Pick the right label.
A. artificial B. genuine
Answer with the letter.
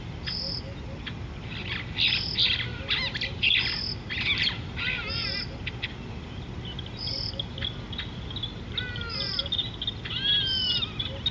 B